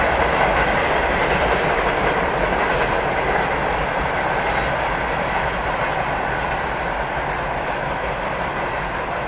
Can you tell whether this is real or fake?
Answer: real